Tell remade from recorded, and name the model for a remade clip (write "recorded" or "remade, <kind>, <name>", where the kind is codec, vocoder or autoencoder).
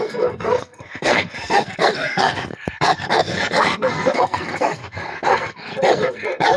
remade, codec, SNAC